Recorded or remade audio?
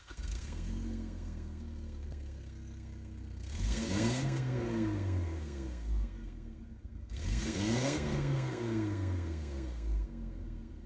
remade